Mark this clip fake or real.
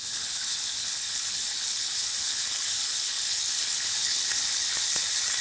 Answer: fake